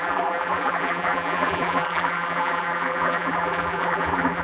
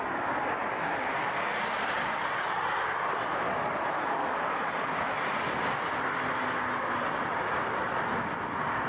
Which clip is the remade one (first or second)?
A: first